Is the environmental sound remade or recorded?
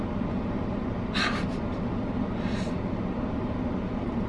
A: recorded